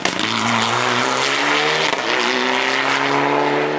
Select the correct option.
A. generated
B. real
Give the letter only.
B